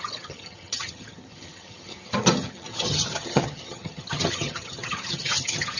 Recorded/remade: remade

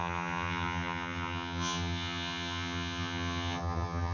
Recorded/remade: remade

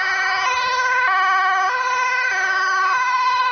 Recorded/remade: recorded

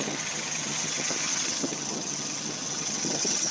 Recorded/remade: remade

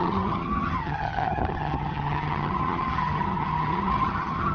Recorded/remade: remade